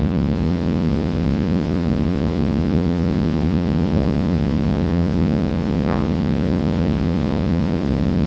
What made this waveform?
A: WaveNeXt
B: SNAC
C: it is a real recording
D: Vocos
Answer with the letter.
D